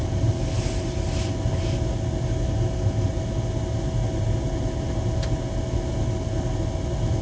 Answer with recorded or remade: recorded